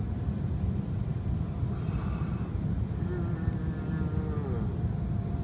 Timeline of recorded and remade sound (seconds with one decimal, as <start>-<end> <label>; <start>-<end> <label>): 0.0-5.4 recorded